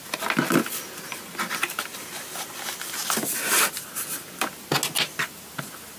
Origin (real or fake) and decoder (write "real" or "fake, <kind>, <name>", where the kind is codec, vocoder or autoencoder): real